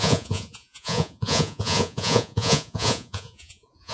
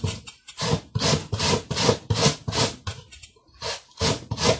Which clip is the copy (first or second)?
first